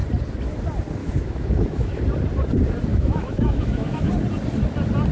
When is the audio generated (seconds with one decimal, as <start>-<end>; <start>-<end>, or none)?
1.0-2.0; 2.9-4.1